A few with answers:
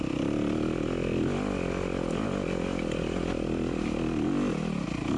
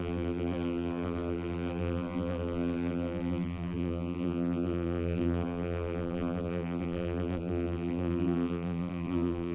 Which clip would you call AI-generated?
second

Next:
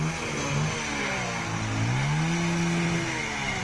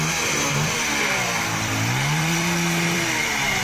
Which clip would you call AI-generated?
second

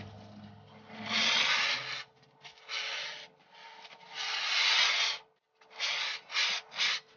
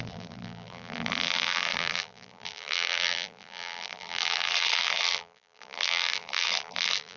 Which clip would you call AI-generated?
second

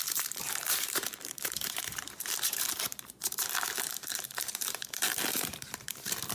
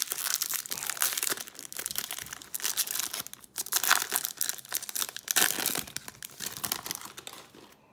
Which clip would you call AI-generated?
first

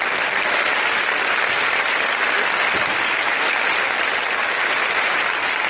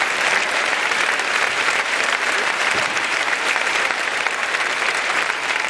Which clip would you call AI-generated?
second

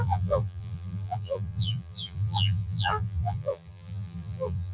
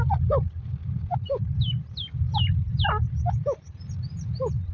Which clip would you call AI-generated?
first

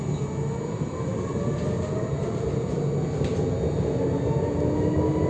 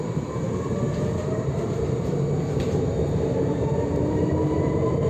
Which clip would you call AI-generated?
second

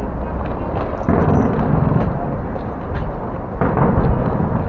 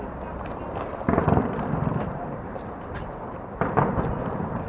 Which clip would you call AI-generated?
second